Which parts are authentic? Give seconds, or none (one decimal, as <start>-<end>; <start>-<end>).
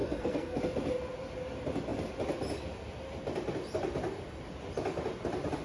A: 0.6-5.6